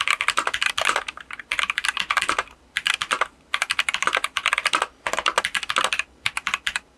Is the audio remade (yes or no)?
no